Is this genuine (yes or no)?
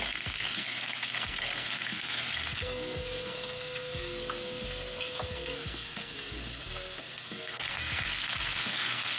no